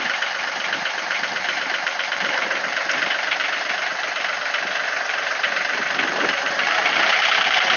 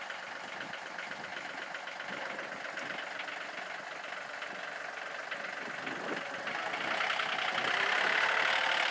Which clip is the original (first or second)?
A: second